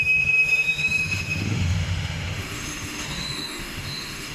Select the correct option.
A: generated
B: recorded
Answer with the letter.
A